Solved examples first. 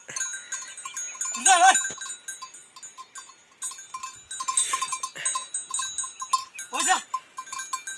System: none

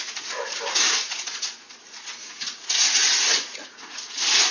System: vocoder, Vocos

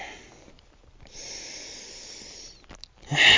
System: none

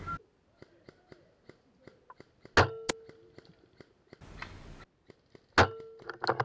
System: none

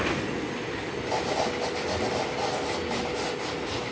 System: none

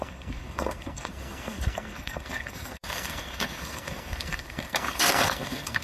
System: codec, SNAC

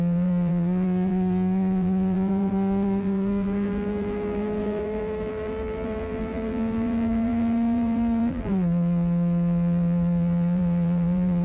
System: vocoder, BigVGAN v2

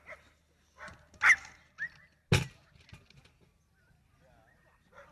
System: none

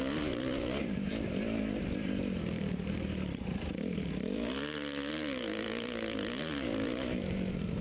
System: vocoder, BigVGAN v2